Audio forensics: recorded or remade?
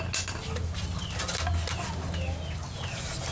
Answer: recorded